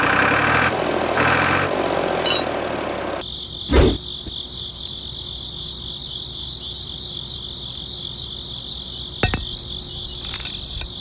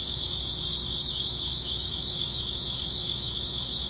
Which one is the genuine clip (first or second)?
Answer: first